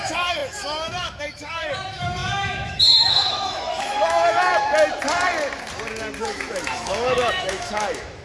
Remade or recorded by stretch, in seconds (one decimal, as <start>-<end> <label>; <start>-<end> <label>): 0.0-4.5 remade; 4.5-6.2 recorded; 6.2-8.2 remade